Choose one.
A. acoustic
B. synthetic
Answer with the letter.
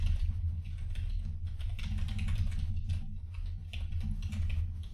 A